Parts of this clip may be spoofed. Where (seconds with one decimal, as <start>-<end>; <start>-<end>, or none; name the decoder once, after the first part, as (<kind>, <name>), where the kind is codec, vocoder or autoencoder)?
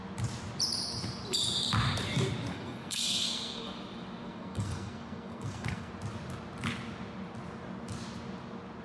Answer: 2.5-3.6 (codec, SNAC); 4.2-5.9